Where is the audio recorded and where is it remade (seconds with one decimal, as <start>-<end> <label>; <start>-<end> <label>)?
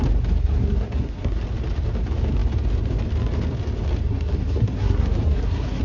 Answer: 0.0-0.4 recorded; 0.4-1.4 remade; 1.4-4.1 recorded; 4.1-5.8 remade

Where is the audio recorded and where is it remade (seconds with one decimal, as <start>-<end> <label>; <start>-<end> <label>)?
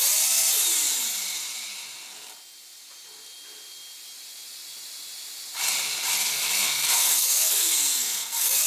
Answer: 0.0-6.2 recorded; 6.2-8.7 remade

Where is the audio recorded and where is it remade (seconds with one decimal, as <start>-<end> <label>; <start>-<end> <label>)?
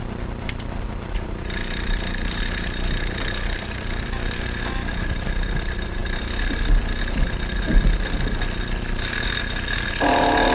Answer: 0.0-10.5 recorded